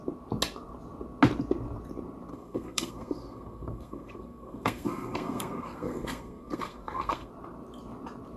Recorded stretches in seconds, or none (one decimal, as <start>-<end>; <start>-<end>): 0.0-2.3; 7.3-8.4